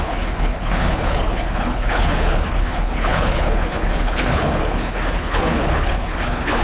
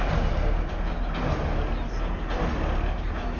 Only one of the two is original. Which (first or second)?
second